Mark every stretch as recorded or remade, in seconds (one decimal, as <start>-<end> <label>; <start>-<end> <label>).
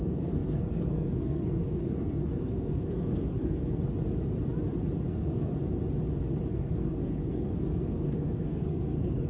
0.0-3.8 remade; 3.8-5.1 recorded; 5.1-5.5 remade; 5.5-6.5 recorded; 6.5-9.3 remade